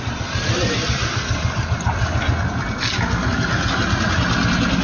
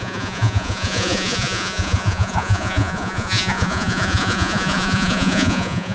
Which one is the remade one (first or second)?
second